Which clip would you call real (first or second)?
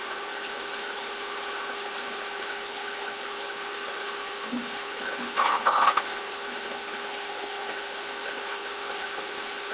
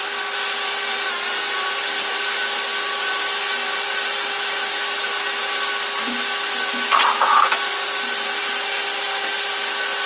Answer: second